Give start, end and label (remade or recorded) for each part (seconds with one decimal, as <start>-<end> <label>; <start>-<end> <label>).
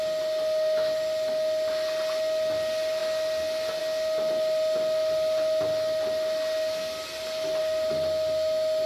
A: 0.0-8.9 recorded